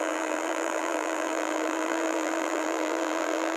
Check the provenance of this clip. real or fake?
fake